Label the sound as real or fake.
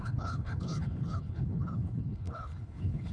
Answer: fake